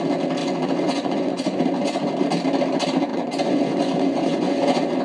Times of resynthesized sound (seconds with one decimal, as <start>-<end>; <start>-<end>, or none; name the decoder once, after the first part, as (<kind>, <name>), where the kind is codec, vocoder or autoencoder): 0.4-2.1 (vocoder, Vocos); 3.1-5.0